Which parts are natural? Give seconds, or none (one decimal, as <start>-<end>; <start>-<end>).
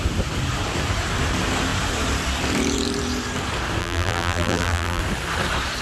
0.0-3.8; 5.0-5.8